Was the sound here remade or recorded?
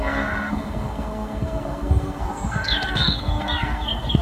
remade